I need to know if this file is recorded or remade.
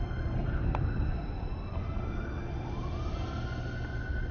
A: recorded